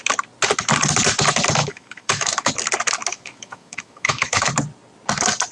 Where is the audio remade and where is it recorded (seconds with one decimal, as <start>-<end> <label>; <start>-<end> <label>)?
0.0-1.6 recorded; 1.6-2.5 remade; 2.5-3.1 recorded; 3.1-4.5 remade; 4.5-5.5 recorded